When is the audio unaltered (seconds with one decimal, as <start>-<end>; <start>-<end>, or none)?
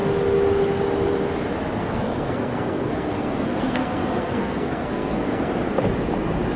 0.0-1.8; 5.5-6.6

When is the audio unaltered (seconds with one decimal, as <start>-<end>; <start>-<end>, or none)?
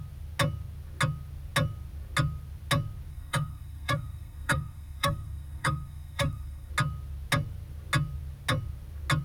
0.0-3.1; 6.7-9.2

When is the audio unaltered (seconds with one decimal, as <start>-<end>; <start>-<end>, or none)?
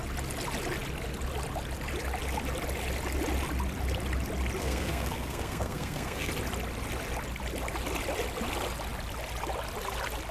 0.0-4.6; 6.3-10.3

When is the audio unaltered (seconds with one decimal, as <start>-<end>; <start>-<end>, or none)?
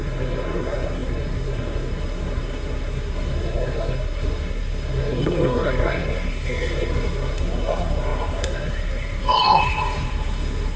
none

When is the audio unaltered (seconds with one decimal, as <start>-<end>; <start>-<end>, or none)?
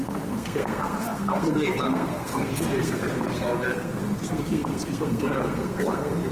none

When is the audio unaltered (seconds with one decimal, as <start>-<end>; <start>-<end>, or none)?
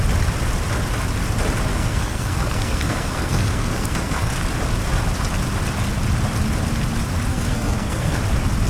0.0-1.7; 4.3-7.3; 8.2-8.7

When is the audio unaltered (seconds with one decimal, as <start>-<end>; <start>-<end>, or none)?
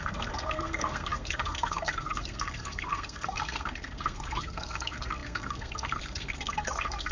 none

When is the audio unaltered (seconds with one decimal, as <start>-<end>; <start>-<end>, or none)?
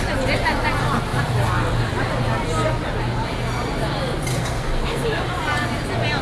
0.0-4.3; 5.2-6.2